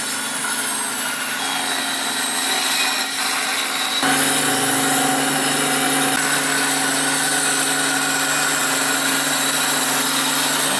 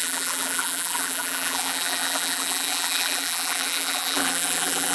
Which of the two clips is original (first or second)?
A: first